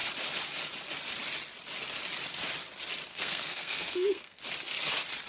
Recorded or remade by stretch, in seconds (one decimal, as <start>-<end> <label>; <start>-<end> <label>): 0.0-3.1 recorded; 3.1-4.4 remade; 4.4-5.3 recorded

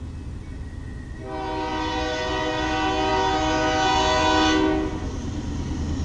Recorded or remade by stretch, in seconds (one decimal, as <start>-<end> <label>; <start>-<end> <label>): 0.0-6.0 recorded